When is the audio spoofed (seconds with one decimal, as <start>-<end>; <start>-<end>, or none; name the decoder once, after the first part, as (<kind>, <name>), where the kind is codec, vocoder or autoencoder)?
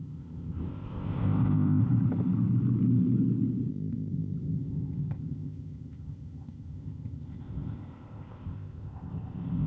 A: 0.0-1.8 (codec, ZipCodec); 3.7-9.7